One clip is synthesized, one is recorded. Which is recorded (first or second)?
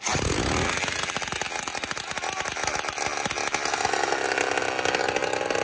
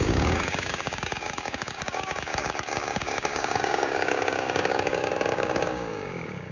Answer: first